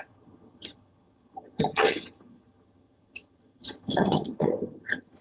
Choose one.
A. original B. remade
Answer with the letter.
B